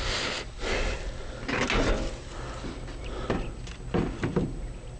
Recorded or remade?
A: recorded